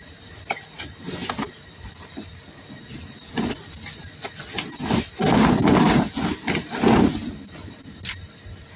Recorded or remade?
recorded